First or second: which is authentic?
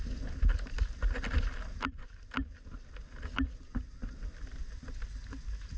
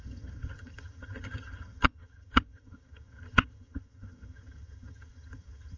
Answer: first